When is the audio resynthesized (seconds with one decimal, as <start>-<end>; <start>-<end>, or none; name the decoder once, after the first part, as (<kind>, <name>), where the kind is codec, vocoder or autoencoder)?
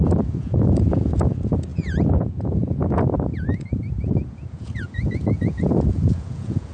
0.0-6.7 (vocoder, Vocos)